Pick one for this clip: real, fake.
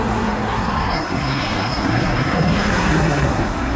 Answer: fake